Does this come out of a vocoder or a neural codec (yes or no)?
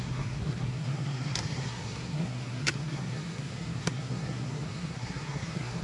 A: yes